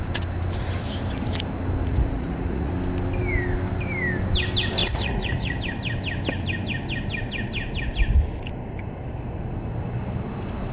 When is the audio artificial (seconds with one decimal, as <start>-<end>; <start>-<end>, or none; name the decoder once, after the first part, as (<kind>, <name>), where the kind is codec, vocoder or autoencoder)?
1.8-2.7 (vocoder, Vocos); 4.8-5.6